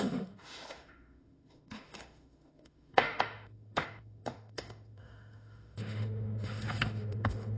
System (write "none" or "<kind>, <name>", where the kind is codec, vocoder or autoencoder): autoencoder, DAC-VAE